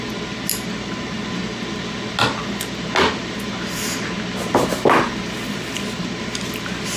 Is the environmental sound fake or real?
real